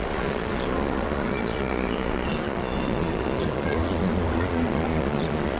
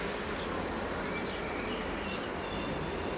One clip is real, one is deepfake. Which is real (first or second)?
second